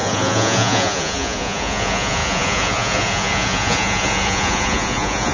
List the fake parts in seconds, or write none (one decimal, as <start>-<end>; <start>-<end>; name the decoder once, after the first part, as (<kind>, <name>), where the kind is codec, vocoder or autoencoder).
0.0-5.3 (vocoder, Vocos)